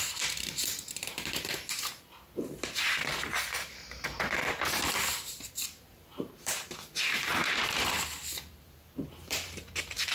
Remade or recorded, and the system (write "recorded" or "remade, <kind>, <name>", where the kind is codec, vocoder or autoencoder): remade, vocoder, BigVGAN v2